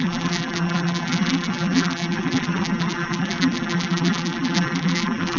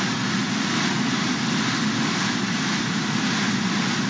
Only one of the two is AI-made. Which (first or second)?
first